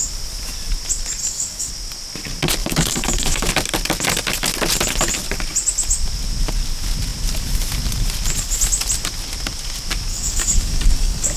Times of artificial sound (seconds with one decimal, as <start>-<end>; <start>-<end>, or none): 1.2-1.7; 2.6-3.5; 10.1-11.4